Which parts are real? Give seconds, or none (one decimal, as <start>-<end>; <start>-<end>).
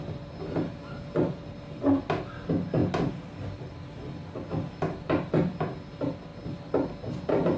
0.0-7.6